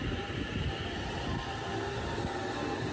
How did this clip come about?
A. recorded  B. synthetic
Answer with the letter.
A